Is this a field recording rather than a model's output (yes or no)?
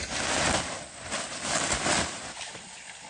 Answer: yes